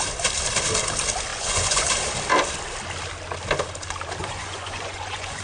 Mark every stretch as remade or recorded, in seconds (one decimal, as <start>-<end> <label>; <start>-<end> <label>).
0.0-1.3 recorded; 1.3-1.8 remade; 1.8-4.2 recorded; 4.2-5.4 remade